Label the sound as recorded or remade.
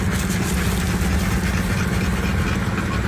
recorded